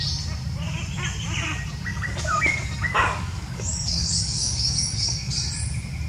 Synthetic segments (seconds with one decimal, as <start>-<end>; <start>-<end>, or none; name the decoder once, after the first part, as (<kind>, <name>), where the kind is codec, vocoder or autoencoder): 1.9-5.3 (codec, DAC)